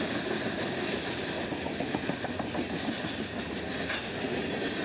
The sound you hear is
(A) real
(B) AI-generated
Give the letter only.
A